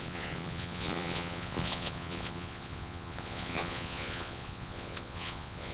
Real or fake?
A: fake